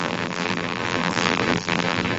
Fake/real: fake